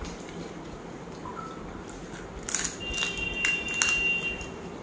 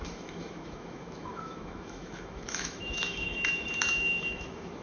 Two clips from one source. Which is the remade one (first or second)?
second